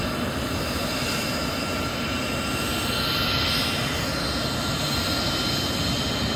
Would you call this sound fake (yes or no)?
no